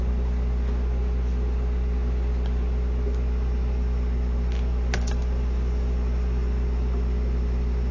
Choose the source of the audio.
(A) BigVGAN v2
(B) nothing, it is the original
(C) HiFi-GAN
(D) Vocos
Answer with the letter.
B